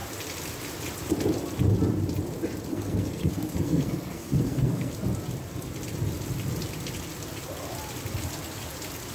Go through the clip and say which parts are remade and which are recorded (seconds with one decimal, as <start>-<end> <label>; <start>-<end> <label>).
0.0-2.7 recorded; 2.7-4.9 remade; 4.9-9.1 recorded